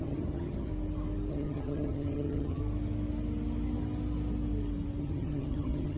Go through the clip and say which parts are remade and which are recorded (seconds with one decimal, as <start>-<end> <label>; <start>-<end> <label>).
0.0-0.7 remade; 0.7-1.3 recorded; 1.3-2.6 remade; 2.6-5.0 recorded; 5.0-6.0 remade